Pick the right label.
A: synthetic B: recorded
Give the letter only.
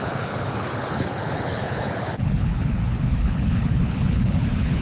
A